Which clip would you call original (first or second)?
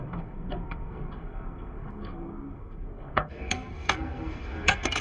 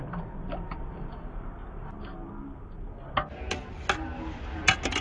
second